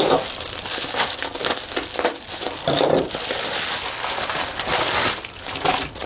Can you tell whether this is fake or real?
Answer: real